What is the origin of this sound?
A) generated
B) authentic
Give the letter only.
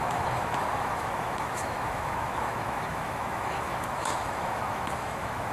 A